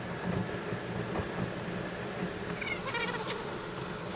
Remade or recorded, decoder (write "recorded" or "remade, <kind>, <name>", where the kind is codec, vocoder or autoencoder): recorded